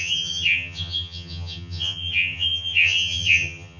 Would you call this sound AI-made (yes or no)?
yes